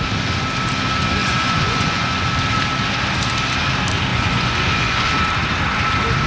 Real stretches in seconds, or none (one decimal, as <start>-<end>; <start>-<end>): 0.0-1.2; 2.2-4.1; 5.1-6.3